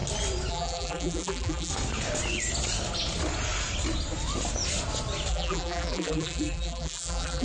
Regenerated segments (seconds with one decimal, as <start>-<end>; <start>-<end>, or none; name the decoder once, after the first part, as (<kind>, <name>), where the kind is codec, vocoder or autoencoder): 0.5-1.7 (vocoder, BigVGAN v2); 5.3-7.4